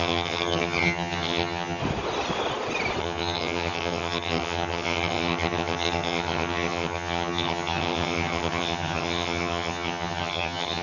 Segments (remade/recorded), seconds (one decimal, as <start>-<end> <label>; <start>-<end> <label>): 0.0-1.8 remade; 1.8-3.0 recorded; 3.0-10.8 remade